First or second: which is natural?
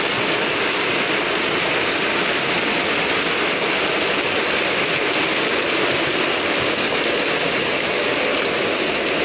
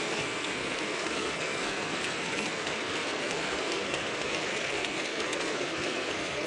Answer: first